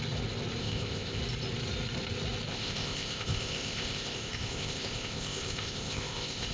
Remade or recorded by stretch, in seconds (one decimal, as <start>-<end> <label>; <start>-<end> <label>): 0.0-0.6 recorded; 0.6-1.2 remade; 1.2-2.5 recorded; 2.5-6.5 remade